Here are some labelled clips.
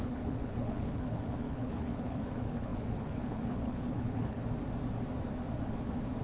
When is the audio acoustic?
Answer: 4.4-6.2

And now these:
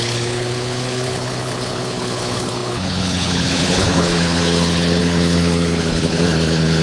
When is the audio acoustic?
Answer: none

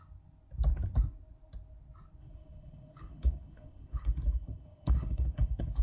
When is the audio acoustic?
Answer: 0.0-2.2

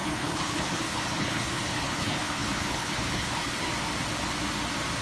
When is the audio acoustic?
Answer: 3.7-5.0

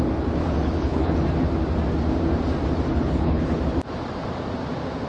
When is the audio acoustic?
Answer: 0.0-0.4; 1.1-2.9; 3.6-5.1

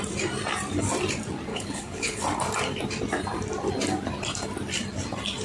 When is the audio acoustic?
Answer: 0.0-1.5; 2.2-5.4